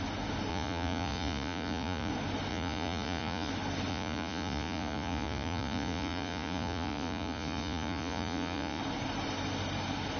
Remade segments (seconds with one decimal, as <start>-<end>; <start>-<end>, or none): 0.5-2.1; 2.5-3.5; 3.9-8.8